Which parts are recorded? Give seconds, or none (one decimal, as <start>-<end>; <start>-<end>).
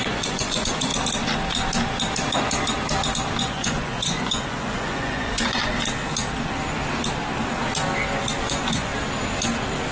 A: 0.9-3.4; 5.6-8.4; 8.9-9.9